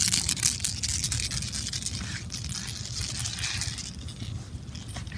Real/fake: real